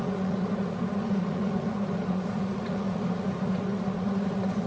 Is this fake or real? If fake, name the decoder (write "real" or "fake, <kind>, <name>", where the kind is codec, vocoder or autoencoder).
fake, vocoder, Vocos